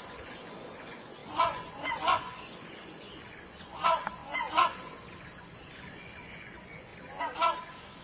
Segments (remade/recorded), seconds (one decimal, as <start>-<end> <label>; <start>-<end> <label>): 0.0-6.9 remade; 6.9-7.6 recorded; 7.6-8.0 remade